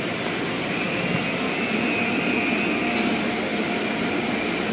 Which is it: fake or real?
real